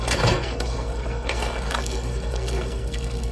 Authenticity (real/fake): fake